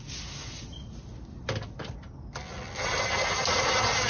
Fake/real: real